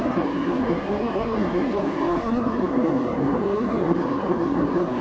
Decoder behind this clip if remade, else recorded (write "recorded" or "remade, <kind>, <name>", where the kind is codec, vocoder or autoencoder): remade, codec, SNAC